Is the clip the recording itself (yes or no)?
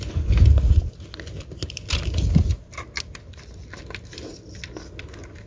yes